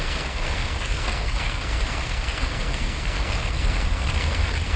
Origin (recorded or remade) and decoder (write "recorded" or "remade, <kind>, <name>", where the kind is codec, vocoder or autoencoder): remade, codec, SNAC